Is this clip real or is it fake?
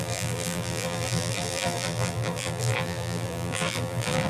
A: fake